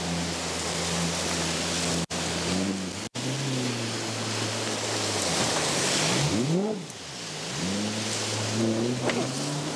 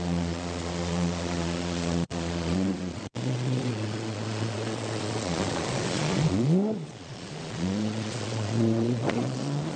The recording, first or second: first